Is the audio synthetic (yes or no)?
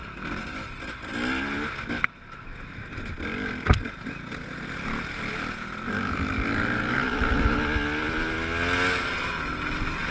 no